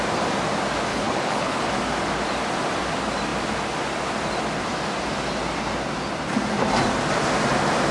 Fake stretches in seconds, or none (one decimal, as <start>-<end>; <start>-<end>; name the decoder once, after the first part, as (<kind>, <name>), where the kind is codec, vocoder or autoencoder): 0.9-1.7 (codec, HILCodec)